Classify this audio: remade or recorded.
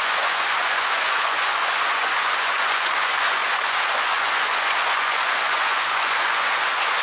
remade